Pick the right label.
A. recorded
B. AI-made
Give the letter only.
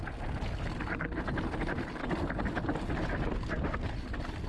A